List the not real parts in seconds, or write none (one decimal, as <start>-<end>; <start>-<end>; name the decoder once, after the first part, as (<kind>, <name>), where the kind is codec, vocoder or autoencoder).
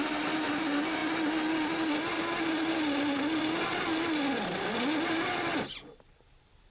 none